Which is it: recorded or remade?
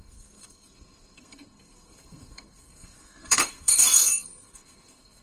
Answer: remade